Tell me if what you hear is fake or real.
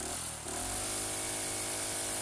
real